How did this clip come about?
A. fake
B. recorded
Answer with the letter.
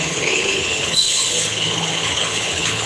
A